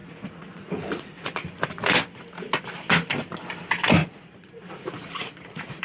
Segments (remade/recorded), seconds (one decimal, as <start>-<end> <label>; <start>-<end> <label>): 0.0-1.5 remade; 1.5-4.0 recorded; 4.0-5.8 remade